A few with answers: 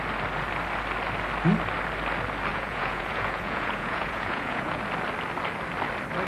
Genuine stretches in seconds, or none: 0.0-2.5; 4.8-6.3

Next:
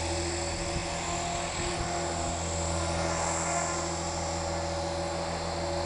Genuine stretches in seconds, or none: 0.0-5.9

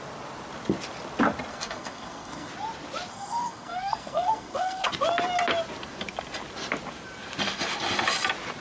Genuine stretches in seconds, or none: 0.0-1.5; 2.5-3.1; 4.9-8.6

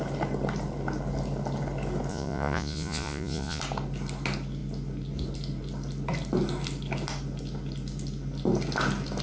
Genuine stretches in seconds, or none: 0.0-2.1; 3.6-9.2